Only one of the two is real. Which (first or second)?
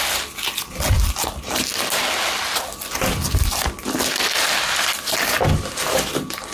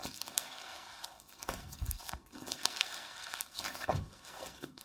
first